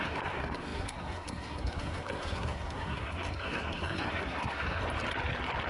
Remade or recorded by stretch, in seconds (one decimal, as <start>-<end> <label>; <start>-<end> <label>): 0.0-4.8 remade; 4.8-5.7 recorded